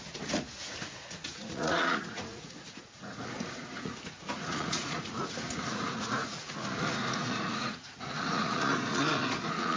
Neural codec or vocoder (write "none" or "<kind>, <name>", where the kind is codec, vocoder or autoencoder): vocoder, Vocos